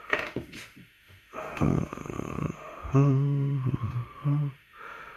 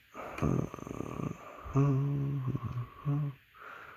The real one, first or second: second